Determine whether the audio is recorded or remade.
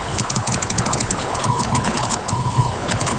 remade